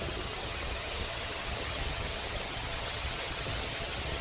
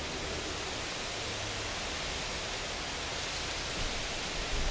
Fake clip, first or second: first